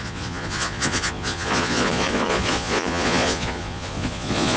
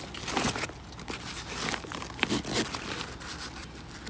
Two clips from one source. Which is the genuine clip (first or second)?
second